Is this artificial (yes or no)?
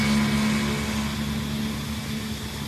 no